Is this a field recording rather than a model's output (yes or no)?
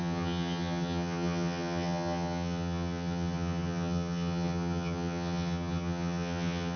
no